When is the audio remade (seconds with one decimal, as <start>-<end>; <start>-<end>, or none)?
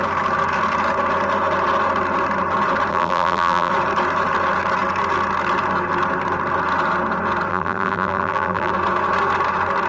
2.9-3.7; 7.5-8.7